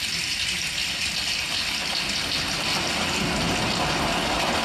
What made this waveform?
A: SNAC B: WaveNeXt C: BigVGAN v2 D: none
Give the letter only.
D